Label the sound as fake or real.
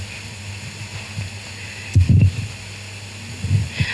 real